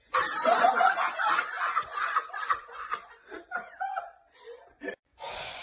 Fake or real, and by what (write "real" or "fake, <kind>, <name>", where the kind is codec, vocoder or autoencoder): fake, vocoder, Vocos